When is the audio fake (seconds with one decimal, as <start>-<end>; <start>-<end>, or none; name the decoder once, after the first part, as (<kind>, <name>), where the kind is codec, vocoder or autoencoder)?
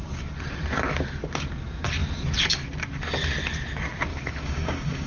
4.1-5.1 (codec, DAC)